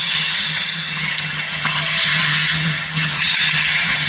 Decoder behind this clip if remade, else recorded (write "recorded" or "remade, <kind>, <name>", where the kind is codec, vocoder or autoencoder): remade, vocoder, HiFi-GAN